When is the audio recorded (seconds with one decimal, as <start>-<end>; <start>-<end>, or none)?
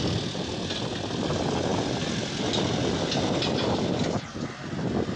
0.0-5.2